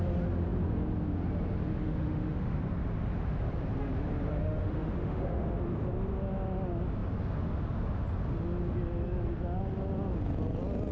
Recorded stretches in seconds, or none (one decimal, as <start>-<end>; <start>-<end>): 0.0-1.8; 2.6-4.4; 5.5-10.9